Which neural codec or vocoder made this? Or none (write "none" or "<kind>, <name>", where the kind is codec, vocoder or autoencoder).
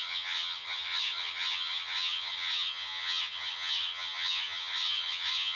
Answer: vocoder, HiFi-GAN